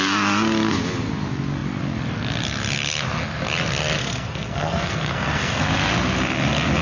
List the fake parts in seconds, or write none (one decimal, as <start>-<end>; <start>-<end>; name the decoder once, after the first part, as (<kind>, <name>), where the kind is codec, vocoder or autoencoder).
4.0-5.6 (codec, SNAC)